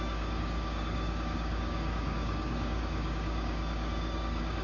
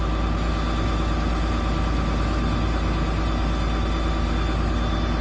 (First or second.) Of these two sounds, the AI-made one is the first